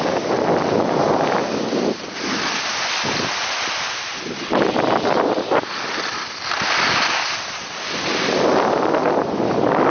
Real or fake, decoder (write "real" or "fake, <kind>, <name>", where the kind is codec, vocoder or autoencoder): real